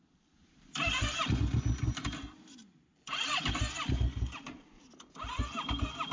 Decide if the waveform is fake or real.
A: real